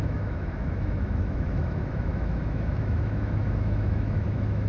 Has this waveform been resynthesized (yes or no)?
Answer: yes